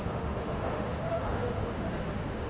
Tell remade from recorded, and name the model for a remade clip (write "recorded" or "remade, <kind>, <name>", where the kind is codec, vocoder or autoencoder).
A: remade, autoencoder, DAC-VAE